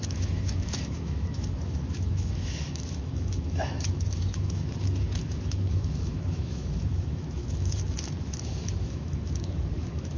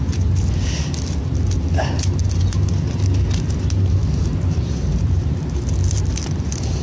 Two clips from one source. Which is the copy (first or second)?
first